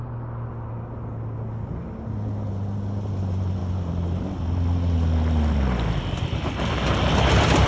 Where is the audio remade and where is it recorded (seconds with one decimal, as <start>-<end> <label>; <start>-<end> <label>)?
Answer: 0.0-7.7 recorded